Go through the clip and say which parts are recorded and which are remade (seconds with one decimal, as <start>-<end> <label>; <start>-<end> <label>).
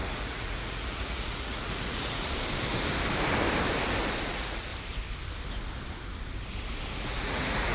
0.0-2.3 remade; 2.3-4.2 recorded; 4.2-4.7 remade; 4.7-7.0 recorded; 7.0-7.7 remade